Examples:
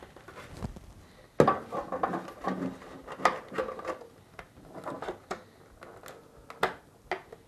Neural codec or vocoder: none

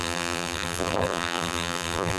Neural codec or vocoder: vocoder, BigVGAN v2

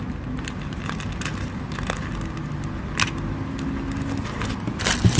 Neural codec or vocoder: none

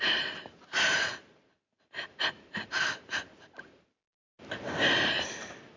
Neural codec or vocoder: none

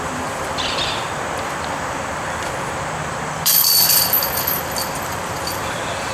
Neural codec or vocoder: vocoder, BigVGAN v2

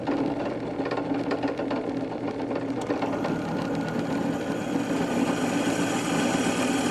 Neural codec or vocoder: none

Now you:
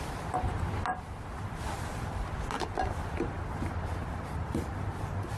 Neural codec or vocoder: none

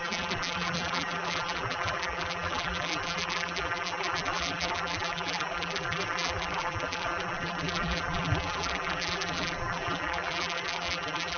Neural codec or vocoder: vocoder, BigVGAN v2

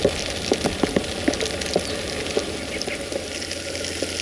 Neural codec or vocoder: none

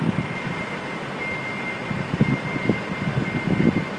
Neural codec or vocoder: none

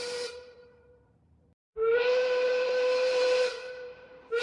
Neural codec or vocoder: vocoder, BigVGAN v2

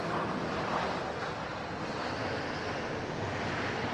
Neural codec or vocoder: none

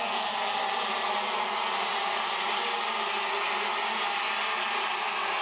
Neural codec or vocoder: none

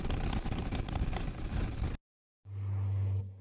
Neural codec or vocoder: none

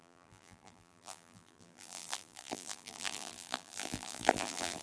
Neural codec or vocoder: vocoder, BigVGAN v2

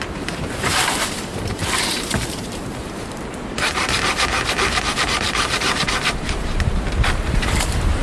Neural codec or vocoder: vocoder, BigVGAN v2